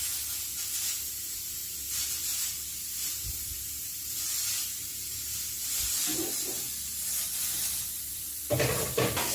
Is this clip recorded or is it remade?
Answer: recorded